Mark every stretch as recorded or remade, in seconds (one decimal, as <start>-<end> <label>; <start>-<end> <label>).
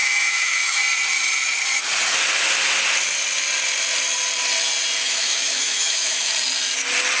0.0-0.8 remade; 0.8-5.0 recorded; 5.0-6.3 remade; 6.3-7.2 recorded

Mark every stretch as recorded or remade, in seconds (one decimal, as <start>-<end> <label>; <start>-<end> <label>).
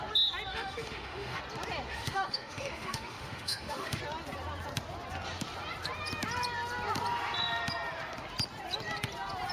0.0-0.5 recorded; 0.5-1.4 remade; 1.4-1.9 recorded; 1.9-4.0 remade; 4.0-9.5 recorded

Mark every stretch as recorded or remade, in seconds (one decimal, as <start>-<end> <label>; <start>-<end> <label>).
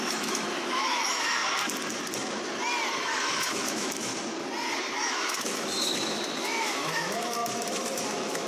0.0-1.4 remade; 1.4-3.0 recorded; 3.0-4.1 remade; 4.1-4.9 recorded; 4.9-8.5 remade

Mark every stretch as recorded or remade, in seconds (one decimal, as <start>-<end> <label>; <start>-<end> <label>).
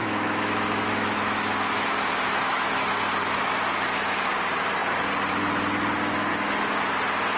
0.0-2.9 remade; 2.9-6.3 recorded; 6.3-6.9 remade; 6.9-7.4 recorded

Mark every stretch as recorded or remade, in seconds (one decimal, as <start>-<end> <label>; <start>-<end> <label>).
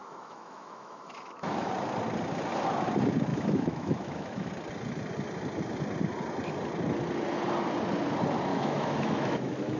0.0-1.7 remade; 1.7-3.3 recorded; 3.3-4.5 remade; 4.5-8.5 recorded; 8.5-9.8 remade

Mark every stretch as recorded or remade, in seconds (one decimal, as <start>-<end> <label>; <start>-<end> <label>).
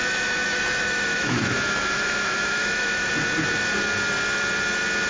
0.0-3.1 remade; 3.1-5.1 recorded